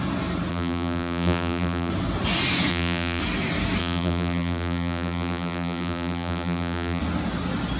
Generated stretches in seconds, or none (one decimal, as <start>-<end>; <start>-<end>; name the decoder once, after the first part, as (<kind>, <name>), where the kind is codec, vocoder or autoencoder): 0.5-1.9 (vocoder, BigVGAN v2); 2.7-3.2; 3.8-7.0